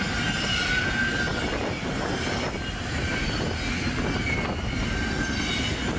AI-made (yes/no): no